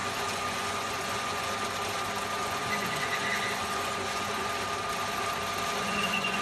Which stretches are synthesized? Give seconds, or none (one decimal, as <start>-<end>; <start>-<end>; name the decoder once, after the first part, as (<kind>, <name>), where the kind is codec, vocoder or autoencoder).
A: 0.0-1.5 (vocoder, Vocos); 2.4-4.5; 5.8-6.4